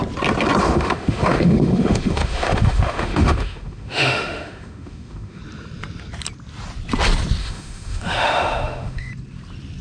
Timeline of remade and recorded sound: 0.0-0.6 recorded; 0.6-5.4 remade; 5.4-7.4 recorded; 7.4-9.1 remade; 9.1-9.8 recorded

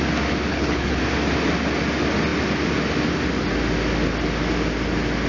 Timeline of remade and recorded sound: 0.0-0.5 recorded; 0.5-1.0 remade; 1.0-5.3 recorded

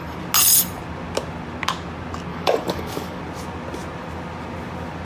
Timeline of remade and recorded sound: 0.0-2.3 recorded; 2.3-3.2 remade; 3.2-5.0 recorded

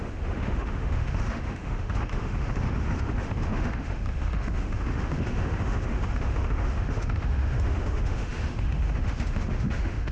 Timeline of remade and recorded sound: 0.0-10.1 remade

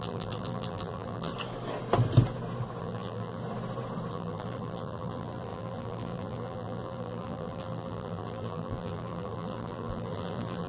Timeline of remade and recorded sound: 0.0-1.3 remade; 1.3-2.8 recorded; 2.8-3.4 remade; 3.4-4.1 recorded; 4.1-10.7 remade